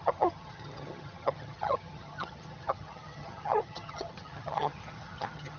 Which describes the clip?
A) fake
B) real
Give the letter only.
A